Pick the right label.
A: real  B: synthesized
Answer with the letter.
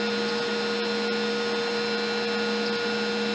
A